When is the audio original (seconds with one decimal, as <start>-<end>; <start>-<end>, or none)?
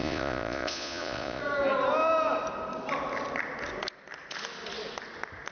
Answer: 1.4-5.5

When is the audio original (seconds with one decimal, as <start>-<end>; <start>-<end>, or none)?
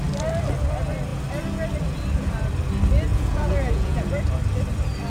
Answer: 0.0-3.1; 4.0-5.1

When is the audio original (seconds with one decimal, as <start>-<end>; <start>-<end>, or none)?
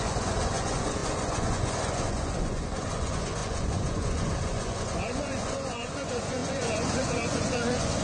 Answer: none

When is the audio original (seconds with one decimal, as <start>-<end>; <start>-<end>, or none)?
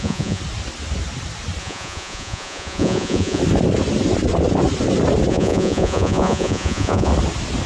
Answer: 0.4-1.6; 3.4-5.3; 7.1-7.7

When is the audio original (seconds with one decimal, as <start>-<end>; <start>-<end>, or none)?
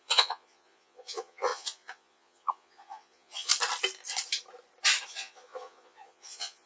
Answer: 3.5-5.1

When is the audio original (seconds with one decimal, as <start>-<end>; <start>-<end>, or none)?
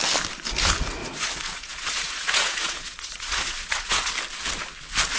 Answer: 0.0-1.0; 4.1-5.2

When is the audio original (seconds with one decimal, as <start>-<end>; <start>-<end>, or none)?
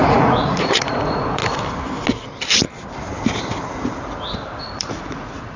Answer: 1.4-4.6